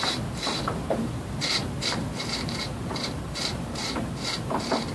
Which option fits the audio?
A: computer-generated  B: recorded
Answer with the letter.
A